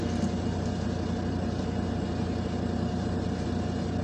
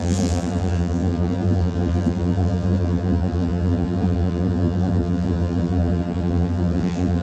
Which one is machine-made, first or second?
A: second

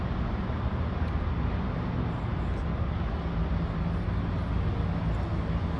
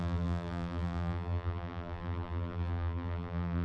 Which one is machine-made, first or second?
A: second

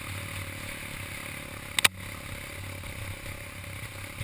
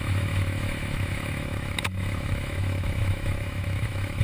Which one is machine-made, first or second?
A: second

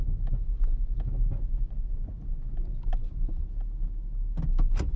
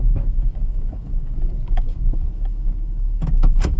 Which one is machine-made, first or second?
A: second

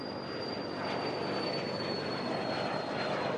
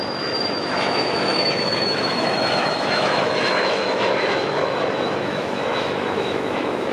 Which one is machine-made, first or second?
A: second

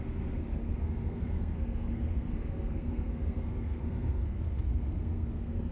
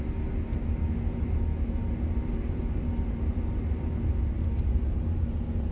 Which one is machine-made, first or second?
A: first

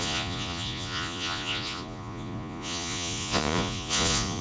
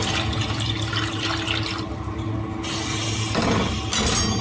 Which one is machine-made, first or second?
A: first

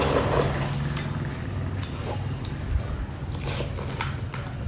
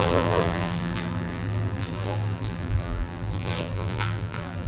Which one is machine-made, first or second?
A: second